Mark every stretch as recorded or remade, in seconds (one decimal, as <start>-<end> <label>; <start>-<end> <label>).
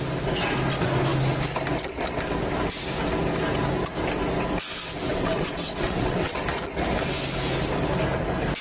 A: 0.0-5.1 recorded; 5.1-6.4 remade; 6.4-8.6 recorded